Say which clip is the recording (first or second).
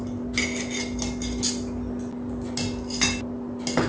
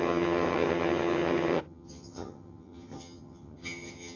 first